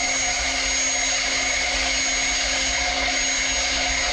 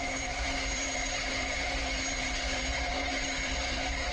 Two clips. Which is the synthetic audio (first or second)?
second